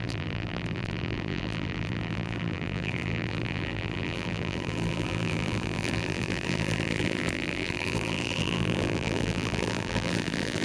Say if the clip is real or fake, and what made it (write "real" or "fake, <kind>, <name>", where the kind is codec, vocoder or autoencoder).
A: fake, vocoder, BigVGAN v2